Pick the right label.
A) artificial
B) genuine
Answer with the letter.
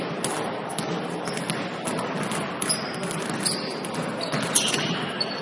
B